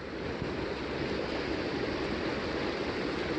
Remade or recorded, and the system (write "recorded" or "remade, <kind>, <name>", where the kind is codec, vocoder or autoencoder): recorded